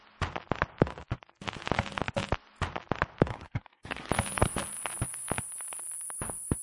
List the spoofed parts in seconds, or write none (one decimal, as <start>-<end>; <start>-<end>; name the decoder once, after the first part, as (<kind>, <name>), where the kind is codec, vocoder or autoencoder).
3.3-4.1 (codec, SNAC)